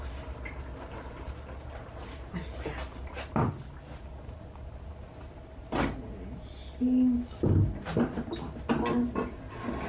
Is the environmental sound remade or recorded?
recorded